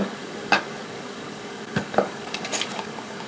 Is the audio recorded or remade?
remade